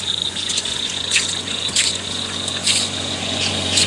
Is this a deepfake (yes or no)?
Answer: yes